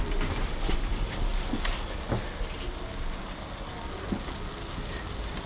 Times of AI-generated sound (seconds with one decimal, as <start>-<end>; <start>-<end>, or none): 0.0-1.3; 3.2-5.5